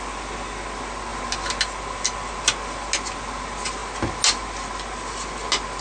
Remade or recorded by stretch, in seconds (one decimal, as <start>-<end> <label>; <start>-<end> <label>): 0.0-5.8 recorded